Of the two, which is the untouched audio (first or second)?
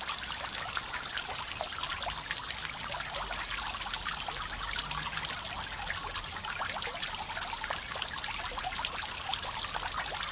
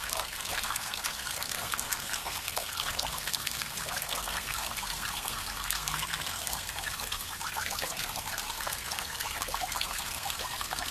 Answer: first